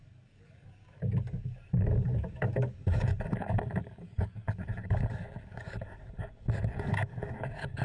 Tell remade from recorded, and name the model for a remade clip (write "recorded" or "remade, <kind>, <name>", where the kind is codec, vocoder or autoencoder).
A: remade, codec, DAC